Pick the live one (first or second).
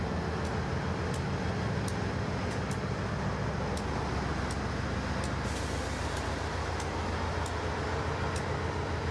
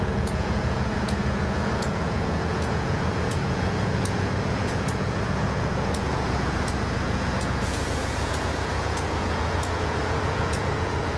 first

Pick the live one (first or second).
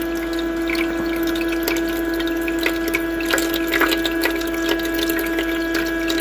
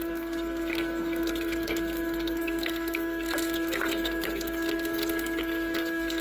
first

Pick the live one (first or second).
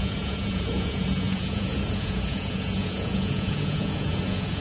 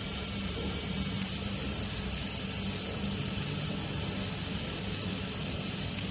second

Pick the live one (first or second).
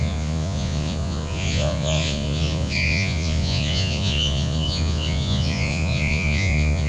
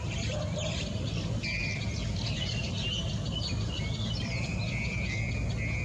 second